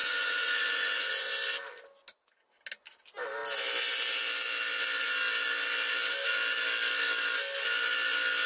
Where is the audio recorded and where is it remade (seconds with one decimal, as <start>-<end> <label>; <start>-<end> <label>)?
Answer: 0.0-1.3 remade; 1.3-8.5 recorded